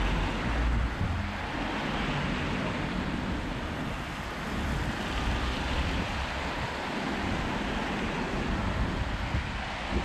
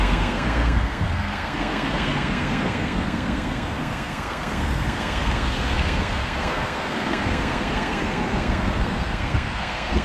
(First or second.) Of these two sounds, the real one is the first